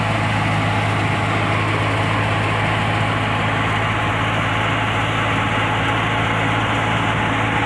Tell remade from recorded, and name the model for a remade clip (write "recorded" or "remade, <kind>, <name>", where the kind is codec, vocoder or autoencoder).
recorded